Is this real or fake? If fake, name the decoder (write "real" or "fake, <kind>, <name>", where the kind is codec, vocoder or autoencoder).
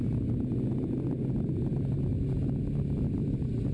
real